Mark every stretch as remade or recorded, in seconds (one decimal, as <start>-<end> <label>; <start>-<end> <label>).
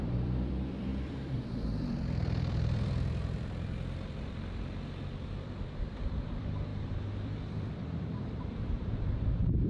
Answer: 0.0-9.7 remade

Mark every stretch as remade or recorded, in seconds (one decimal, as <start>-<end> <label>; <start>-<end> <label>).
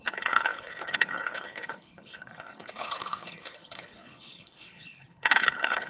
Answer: 0.0-5.9 remade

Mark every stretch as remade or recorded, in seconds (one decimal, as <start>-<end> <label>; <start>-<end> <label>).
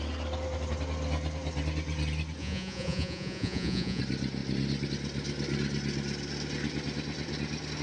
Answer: 0.0-2.4 recorded; 2.4-4.0 remade; 4.0-7.8 recorded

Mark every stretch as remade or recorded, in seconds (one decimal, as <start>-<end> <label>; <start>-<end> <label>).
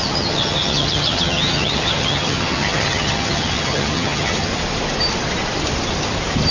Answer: 0.0-4.5 remade; 4.5-6.5 recorded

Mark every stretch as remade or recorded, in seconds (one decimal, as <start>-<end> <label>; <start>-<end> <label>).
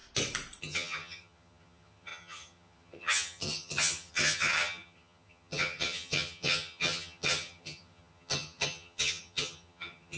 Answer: 0.0-0.6 recorded; 0.6-10.2 remade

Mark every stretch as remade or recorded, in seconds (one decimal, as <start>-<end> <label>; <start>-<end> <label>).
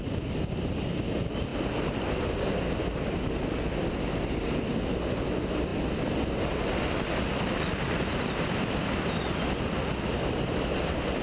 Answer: 0.0-11.2 recorded